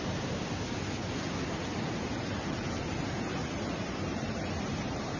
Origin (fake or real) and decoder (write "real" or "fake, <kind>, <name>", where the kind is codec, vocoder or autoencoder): real